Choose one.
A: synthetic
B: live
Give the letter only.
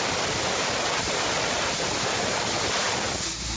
B